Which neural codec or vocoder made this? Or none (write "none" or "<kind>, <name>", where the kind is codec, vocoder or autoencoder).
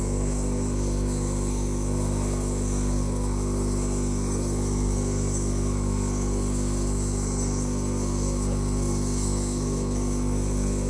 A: codec, SNAC